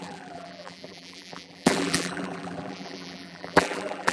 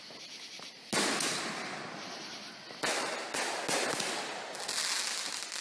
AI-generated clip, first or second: first